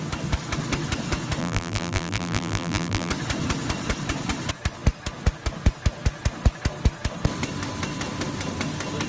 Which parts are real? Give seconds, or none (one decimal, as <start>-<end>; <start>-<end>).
0.0-1.4; 3.1-9.1